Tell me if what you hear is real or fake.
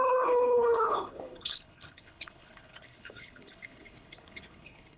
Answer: fake